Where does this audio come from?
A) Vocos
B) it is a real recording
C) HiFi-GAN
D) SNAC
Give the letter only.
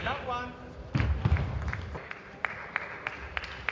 B